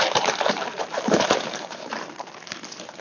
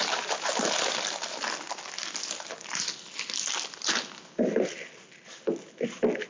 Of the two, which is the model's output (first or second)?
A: first